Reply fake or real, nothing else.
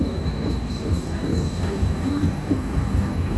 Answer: fake